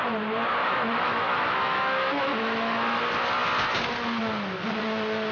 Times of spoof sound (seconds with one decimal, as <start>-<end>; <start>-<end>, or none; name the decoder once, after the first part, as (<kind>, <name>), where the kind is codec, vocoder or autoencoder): 0.6-3.0 (autoencoder, DAC-VAE)